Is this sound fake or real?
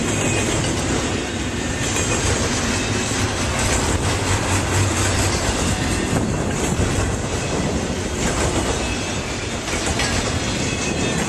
real